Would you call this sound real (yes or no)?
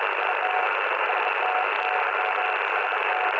yes